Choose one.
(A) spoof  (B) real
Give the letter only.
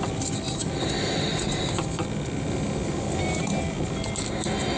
B